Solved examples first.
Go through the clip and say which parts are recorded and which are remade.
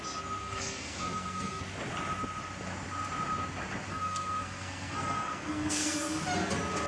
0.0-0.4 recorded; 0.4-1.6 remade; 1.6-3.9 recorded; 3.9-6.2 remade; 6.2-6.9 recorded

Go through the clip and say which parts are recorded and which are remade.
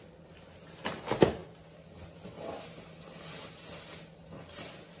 0.0-5.0 recorded